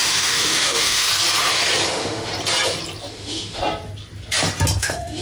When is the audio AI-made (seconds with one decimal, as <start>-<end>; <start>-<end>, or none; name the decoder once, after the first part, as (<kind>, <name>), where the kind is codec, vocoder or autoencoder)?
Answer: 0.0-1.1 (autoencoder, DAC-VAE); 1.9-2.3; 3.1-3.6; 4.8-5.2